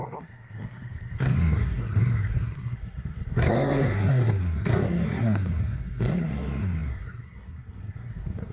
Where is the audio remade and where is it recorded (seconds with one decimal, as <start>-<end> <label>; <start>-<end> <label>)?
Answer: 0.0-8.5 remade